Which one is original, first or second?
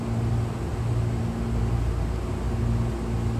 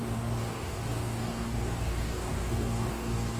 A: first